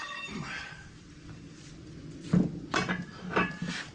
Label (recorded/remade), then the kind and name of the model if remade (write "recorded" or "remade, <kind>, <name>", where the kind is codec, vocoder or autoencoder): recorded